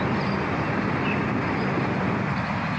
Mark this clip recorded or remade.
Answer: recorded